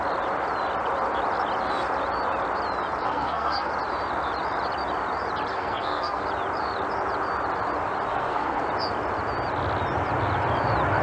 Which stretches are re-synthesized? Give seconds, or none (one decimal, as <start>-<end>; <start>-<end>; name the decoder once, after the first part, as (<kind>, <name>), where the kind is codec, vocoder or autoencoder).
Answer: 3.0-3.7 (codec, SNAC); 5.5-6.2; 8.1-8.6